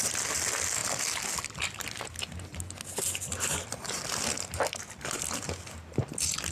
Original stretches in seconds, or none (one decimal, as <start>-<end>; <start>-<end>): 0.0-6.5